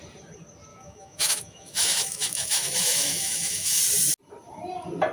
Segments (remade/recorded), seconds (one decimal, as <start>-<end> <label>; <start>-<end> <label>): 0.0-0.7 recorded; 0.7-3.8 remade; 3.8-5.1 recorded

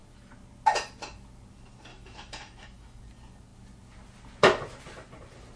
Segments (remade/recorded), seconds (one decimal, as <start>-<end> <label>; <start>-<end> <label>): 0.0-1.9 recorded; 1.9-3.0 remade; 3.0-5.6 recorded

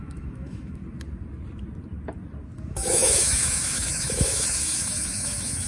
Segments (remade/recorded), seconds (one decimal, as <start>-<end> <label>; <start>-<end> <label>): 0.0-0.8 remade; 0.8-2.6 recorded; 2.6-5.7 remade

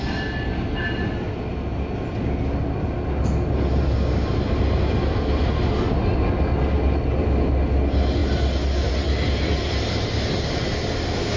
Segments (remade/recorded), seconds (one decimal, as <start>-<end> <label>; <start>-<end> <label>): 0.0-11.4 recorded

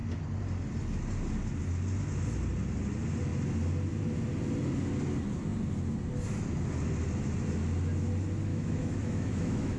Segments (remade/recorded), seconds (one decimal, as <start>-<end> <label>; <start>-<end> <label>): 0.0-8.5 recorded; 8.5-9.8 remade

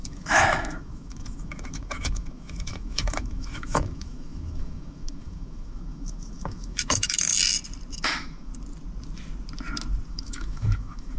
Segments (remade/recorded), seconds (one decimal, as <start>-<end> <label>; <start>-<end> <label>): 0.0-7.3 remade; 7.3-7.9 recorded; 7.9-8.5 remade; 8.5-10.1 recorded; 10.1-11.2 remade